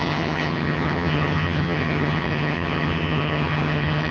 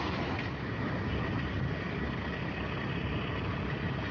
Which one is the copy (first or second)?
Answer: first